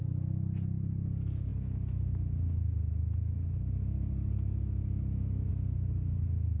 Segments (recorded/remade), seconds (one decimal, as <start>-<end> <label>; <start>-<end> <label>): 0.0-6.6 recorded